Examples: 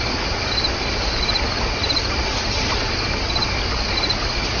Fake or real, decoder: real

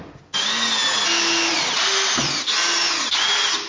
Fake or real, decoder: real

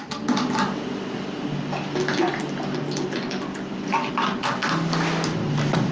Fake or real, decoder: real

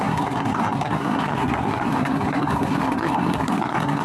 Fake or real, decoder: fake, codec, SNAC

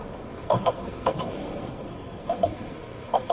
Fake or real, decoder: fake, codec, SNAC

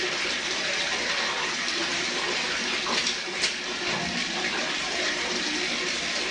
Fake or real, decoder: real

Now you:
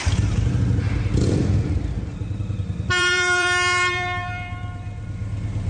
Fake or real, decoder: fake, vocoder, BigVGAN v2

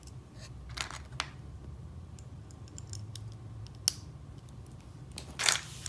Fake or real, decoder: real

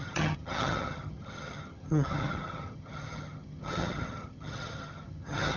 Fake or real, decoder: fake, vocoder, HiFi-GAN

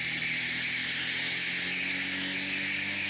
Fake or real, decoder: real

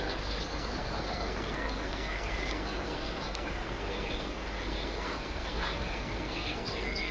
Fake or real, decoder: fake, codec, SNAC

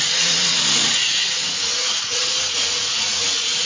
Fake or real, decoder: fake, vocoder, Vocos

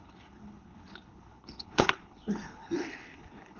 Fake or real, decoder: fake, codec, HILCodec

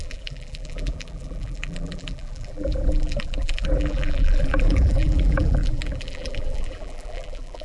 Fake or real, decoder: fake, vocoder, BigVGAN v2